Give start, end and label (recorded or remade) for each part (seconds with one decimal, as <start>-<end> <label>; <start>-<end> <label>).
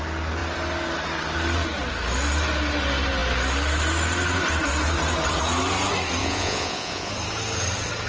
0.0-6.2 recorded; 6.2-7.1 remade; 7.1-8.1 recorded